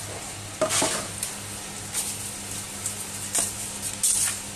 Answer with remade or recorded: recorded